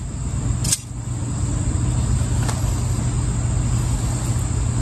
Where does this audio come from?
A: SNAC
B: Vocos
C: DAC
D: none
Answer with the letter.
D